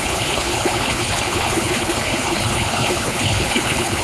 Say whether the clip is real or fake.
fake